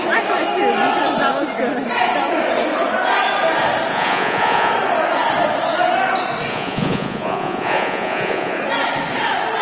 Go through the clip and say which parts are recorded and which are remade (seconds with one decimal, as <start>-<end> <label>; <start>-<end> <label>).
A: 0.0-3.9 recorded; 3.9-4.7 remade; 4.7-6.5 recorded; 6.5-8.6 remade; 8.6-9.6 recorded